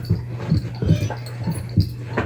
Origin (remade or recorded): recorded